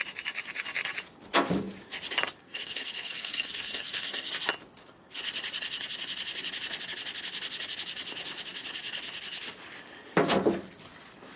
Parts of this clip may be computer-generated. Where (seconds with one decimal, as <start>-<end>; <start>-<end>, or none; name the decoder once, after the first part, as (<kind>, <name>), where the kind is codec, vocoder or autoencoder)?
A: 2.4-4.3 (codec, SNAC)